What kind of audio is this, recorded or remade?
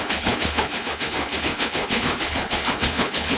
remade